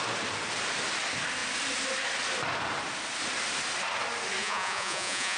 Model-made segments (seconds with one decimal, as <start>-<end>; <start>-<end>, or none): 4.4-5.4